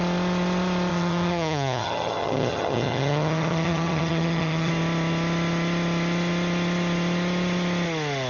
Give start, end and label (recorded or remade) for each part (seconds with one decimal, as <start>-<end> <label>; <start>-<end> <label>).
0.0-0.9 recorded; 0.9-4.7 remade; 4.7-8.3 recorded